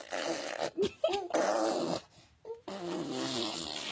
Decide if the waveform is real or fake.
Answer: real